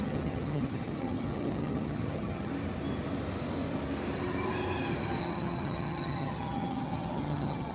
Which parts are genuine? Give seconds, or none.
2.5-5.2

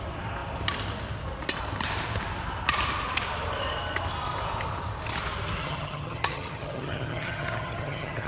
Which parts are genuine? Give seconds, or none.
0.0-5.6

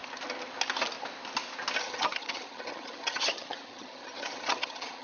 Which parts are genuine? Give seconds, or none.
0.0-1.8

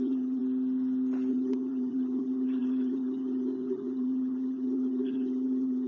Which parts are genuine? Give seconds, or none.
0.4-1.3

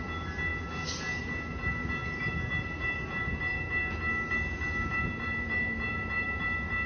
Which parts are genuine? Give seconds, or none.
0.0-6.9